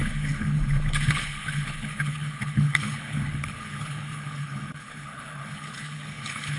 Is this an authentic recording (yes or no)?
no